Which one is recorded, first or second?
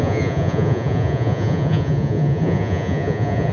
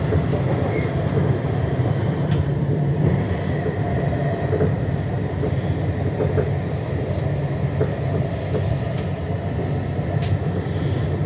second